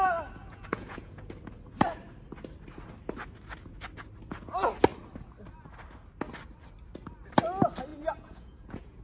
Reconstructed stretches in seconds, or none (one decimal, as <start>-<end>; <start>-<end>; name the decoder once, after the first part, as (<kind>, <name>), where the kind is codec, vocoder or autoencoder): 0.4-1.3 (vocoder, Vocos); 7.9-9.0